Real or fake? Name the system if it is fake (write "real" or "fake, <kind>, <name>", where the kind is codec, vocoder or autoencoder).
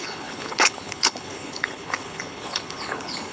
fake, codec, HILCodec